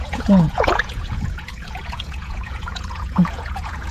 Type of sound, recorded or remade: remade